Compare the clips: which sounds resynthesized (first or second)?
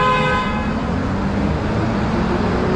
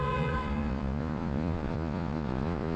second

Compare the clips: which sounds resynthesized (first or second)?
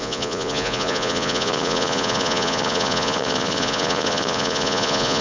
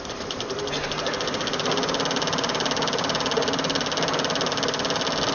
first